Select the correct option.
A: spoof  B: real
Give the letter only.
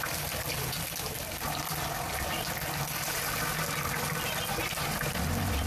B